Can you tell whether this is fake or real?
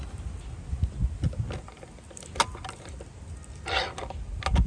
real